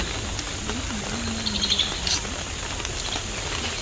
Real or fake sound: real